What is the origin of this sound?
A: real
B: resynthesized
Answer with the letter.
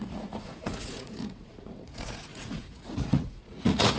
B